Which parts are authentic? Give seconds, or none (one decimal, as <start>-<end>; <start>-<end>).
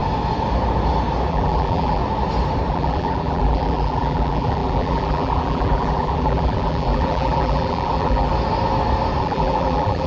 0.0-1.3; 2.0-2.7; 8.3-9.2